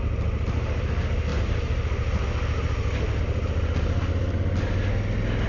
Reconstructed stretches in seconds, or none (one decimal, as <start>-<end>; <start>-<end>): none